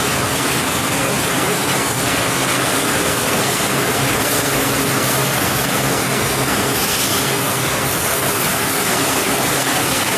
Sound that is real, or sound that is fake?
fake